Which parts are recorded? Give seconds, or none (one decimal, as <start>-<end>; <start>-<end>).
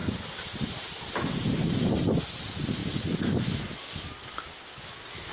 0.0-5.3